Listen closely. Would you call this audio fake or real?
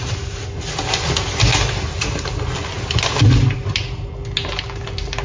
real